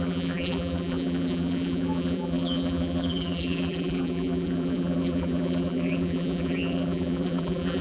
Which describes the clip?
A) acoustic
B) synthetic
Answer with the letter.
B